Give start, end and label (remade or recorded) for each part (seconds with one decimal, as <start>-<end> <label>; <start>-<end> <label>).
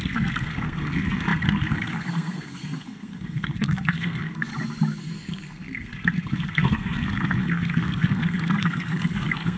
0.0-4.5 remade; 4.5-5.0 recorded; 5.0-9.6 remade